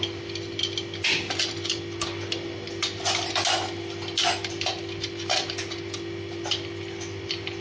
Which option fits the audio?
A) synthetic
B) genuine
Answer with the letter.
B